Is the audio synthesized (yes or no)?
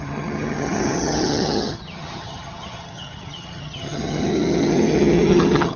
yes